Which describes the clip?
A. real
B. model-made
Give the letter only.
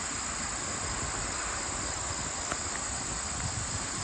A